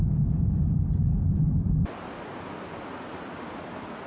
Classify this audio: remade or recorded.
recorded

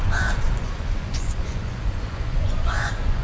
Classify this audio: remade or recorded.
remade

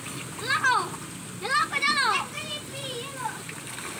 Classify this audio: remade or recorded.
recorded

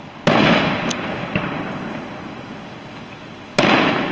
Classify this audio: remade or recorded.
recorded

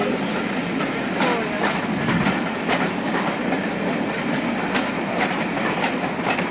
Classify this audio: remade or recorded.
recorded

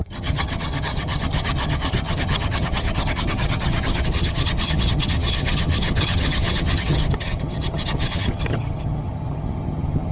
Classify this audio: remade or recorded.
remade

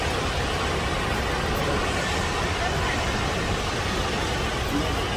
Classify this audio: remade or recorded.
recorded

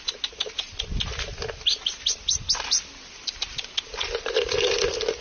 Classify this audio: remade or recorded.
recorded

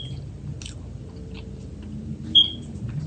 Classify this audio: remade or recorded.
recorded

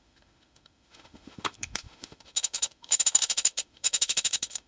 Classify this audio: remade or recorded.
remade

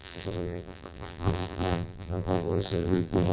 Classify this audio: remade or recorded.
remade